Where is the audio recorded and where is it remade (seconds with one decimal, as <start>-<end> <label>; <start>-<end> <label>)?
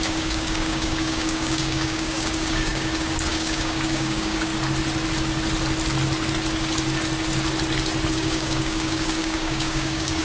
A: 0.0-4.5 remade; 4.5-8.1 recorded; 8.1-10.2 remade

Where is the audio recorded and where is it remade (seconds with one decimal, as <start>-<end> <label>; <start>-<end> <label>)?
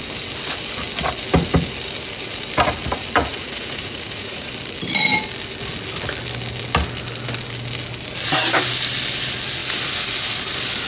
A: 0.0-3.3 recorded; 3.3-4.5 remade; 4.5-10.9 recorded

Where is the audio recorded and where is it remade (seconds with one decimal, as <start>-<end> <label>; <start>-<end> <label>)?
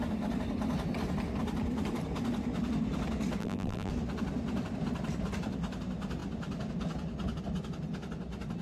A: 0.0-3.4 recorded; 3.4-3.9 remade; 3.9-8.6 recorded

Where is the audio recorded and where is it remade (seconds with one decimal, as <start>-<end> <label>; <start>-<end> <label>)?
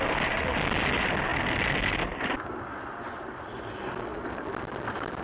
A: 0.0-5.2 recorded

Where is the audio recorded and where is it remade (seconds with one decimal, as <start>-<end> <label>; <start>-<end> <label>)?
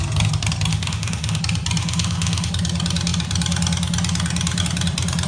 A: 0.0-0.7 recorded; 0.7-1.4 remade; 1.4-1.8 recorded; 1.8-2.5 remade; 2.5-5.3 recorded